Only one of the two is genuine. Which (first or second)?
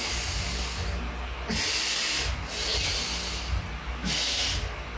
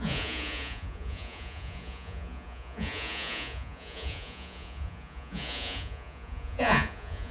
first